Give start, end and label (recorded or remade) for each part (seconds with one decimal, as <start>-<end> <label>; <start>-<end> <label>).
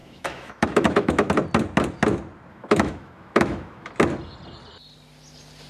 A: 0.0-1.3 remade; 1.3-2.5 recorded; 2.5-3.9 remade; 3.9-5.7 recorded